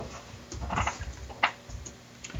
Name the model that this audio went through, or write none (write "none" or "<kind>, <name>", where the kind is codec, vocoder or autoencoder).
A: none